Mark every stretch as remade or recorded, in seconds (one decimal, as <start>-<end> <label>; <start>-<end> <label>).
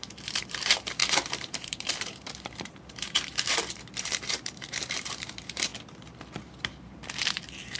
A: 0.0-5.7 remade; 5.7-6.8 recorded; 6.8-7.8 remade